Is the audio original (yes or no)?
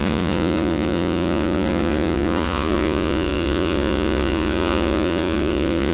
no